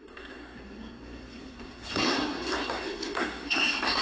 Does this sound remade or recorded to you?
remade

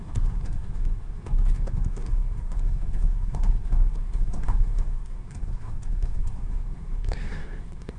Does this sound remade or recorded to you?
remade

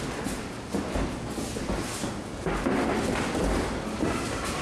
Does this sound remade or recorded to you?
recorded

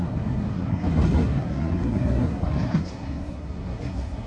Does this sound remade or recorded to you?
remade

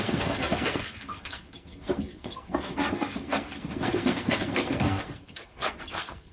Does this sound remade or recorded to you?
remade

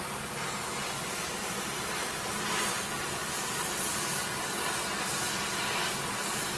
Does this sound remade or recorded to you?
recorded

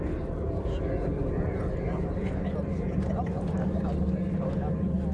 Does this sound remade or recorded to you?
recorded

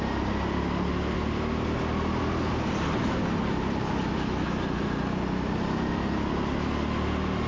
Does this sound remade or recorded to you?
recorded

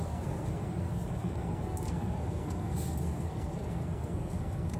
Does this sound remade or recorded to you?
remade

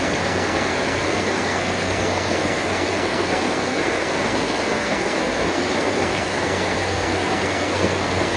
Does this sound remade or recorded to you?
remade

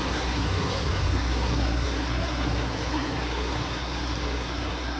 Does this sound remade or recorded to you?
remade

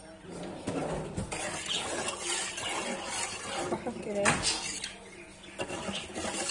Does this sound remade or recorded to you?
recorded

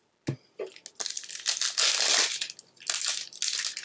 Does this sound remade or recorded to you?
recorded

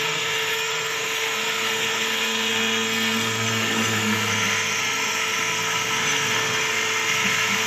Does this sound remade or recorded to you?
remade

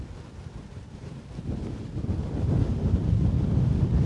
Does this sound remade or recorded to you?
recorded